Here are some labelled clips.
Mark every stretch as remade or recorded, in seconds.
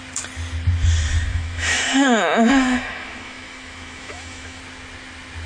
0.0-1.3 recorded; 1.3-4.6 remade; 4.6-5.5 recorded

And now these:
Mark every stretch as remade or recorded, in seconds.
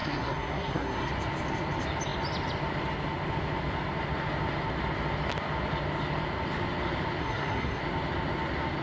0.0-1.1 remade; 1.1-7.2 recorded; 7.2-7.8 remade; 7.8-8.8 recorded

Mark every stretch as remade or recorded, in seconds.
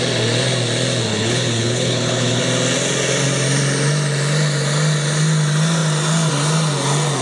0.0-1.1 recorded; 1.1-2.4 remade; 2.4-7.2 recorded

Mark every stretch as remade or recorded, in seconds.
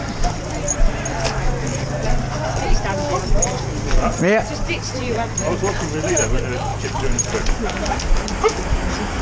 0.0-9.2 recorded